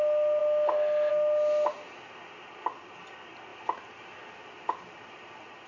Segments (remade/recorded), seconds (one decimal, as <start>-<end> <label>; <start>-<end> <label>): 0.0-5.7 recorded